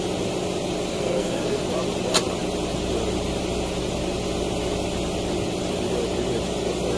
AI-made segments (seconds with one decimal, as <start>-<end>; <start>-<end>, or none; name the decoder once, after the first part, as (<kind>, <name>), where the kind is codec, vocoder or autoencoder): 0.9-1.6 (codec, SNAC)